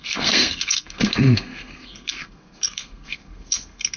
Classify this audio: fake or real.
fake